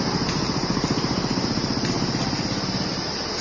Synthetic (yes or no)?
no